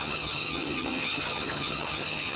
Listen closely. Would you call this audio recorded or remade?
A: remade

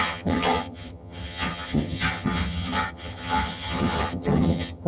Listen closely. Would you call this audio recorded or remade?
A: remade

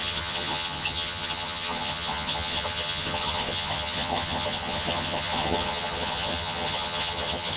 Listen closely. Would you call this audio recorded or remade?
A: remade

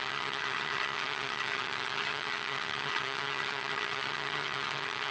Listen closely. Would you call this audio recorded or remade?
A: remade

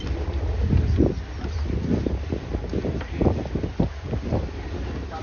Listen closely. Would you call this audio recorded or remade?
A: recorded